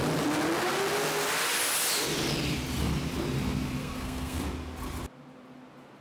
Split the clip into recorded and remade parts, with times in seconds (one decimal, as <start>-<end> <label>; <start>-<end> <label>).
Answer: 0.0-3.8 recorded; 3.8-4.4 remade; 4.4-6.0 recorded